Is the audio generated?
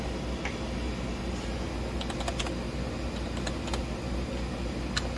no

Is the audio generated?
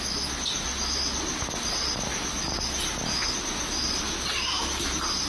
no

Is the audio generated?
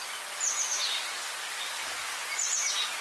no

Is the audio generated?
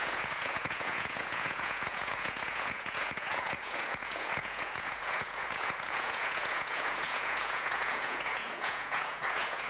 yes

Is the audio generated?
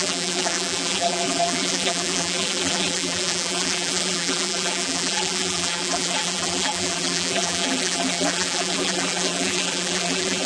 yes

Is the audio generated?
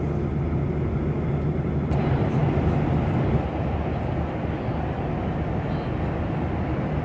no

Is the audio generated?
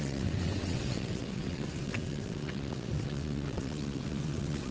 yes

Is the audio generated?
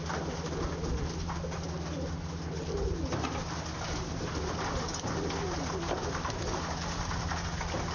no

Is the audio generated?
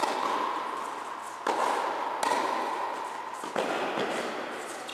no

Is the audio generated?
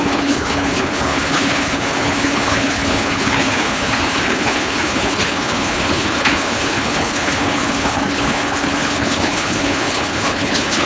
yes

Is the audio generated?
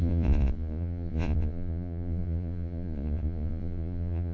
yes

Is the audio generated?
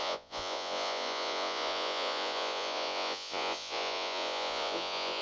yes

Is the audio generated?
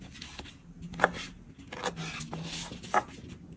no